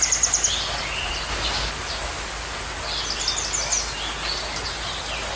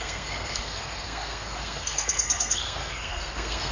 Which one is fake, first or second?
second